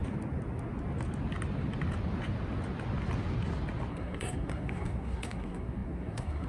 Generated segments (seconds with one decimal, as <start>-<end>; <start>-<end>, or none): 3.9-6.5